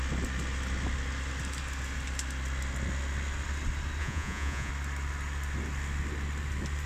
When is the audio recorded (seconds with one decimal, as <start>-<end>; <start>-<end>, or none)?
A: 0.0-4.0; 4.7-6.9